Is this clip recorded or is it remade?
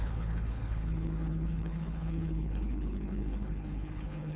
remade